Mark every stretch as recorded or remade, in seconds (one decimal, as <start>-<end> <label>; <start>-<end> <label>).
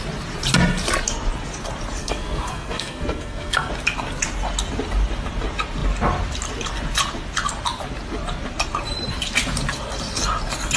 0.0-2.0 recorded; 2.0-3.7 remade; 3.7-10.8 recorded